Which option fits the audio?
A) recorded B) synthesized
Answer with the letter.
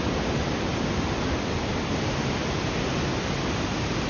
A